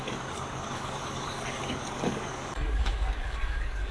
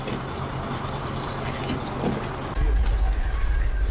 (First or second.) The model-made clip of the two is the first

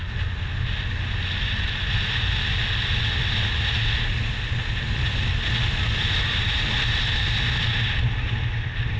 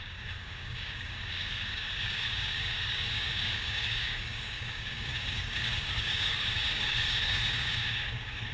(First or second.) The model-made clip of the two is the second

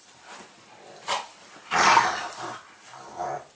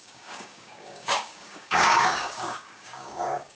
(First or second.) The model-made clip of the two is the second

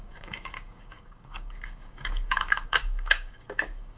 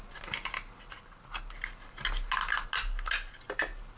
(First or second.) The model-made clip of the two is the first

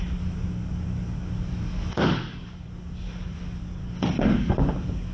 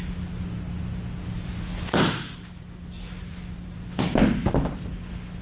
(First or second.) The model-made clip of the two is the first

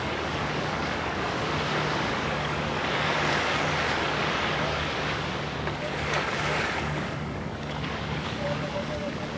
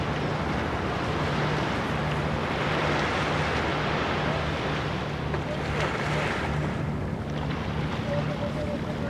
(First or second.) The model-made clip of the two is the first